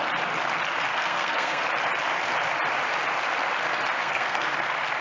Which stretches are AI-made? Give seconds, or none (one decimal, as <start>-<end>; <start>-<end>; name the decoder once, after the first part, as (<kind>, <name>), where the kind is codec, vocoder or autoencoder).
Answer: 0.9-1.6 (codec, SNAC); 4.0-4.5